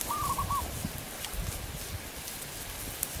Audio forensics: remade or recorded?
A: recorded